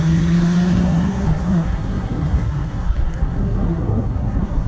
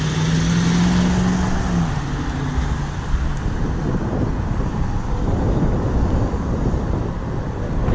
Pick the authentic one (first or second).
second